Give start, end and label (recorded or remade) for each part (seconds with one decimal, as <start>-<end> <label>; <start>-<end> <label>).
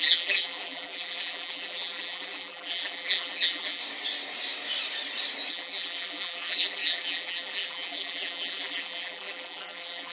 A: 0.0-3.8 remade; 3.8-5.5 recorded; 5.5-10.1 remade